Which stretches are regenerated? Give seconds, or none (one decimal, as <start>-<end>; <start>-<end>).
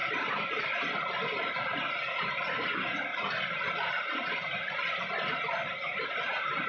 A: 0.0-0.6; 3.1-4.7